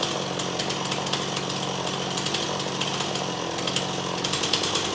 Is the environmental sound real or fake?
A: real